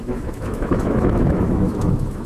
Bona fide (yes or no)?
no